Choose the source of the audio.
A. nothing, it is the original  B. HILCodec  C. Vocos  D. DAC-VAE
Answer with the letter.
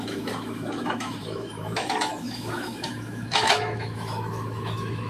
D